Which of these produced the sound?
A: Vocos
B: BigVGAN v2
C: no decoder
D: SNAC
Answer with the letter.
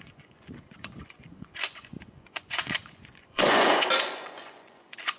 A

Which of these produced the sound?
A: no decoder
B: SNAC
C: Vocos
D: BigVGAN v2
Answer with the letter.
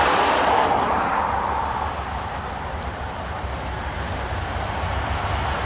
D